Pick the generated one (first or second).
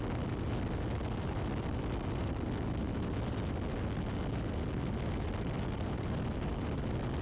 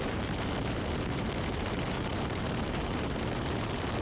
second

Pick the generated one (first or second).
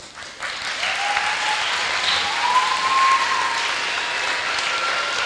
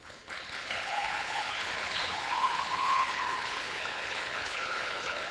second